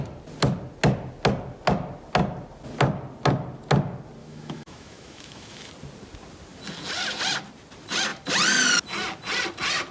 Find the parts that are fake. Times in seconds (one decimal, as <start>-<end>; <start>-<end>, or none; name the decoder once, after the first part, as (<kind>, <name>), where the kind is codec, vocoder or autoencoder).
4.2-5.7 (autoencoder, DAC-VAE)